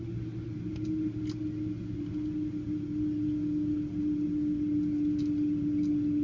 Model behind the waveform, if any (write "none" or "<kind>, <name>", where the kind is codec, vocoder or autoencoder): none